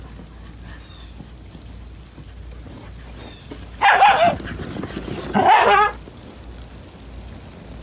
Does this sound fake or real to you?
real